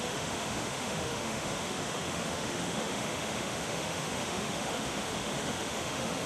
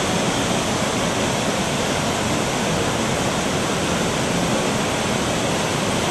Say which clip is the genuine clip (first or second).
second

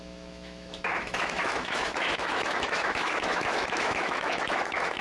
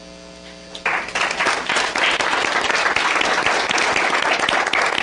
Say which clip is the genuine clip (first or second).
second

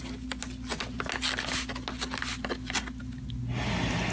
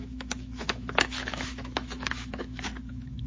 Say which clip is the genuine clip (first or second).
first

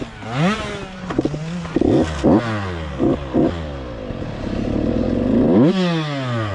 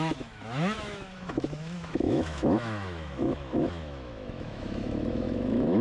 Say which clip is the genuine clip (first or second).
first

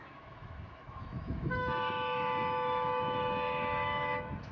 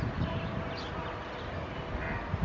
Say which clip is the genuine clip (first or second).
second